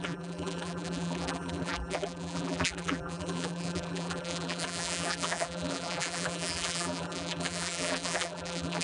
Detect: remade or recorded remade